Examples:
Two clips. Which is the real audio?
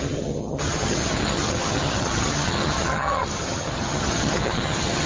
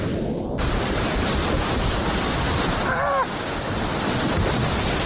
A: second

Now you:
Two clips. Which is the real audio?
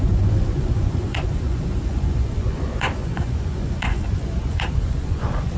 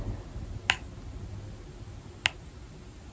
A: second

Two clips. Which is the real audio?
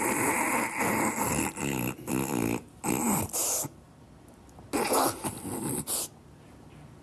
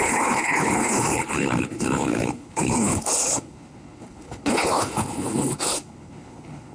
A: first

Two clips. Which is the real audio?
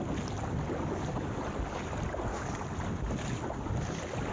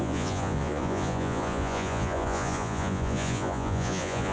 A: first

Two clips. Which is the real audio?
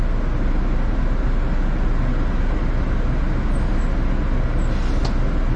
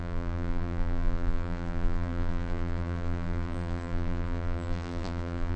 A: first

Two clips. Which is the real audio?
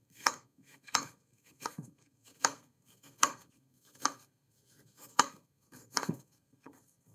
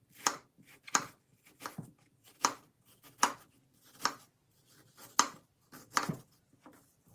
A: second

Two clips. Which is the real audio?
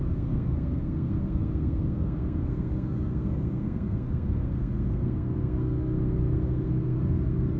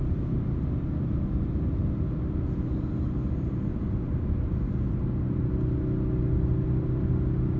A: second